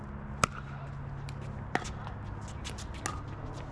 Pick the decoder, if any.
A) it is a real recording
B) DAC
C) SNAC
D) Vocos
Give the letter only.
A